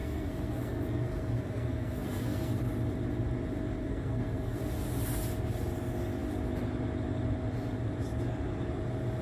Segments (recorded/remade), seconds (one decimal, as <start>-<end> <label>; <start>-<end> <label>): 0.0-2.6 remade; 2.6-3.8 recorded; 3.8-4.6 remade; 4.6-9.2 recorded